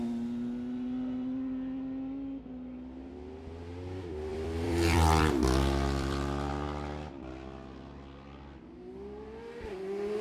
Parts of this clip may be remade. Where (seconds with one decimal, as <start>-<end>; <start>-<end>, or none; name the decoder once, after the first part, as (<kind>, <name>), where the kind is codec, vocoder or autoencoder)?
4.3-6.5 (vocoder, BigVGAN v2)